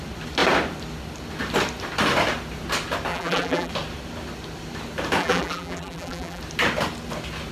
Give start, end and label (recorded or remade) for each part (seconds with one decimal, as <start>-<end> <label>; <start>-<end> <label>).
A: 0.0-3.1 recorded; 3.1-3.7 remade; 3.7-5.2 recorded; 5.2-6.4 remade; 6.4-7.5 recorded